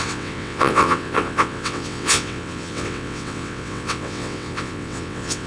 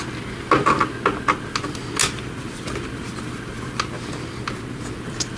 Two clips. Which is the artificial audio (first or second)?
first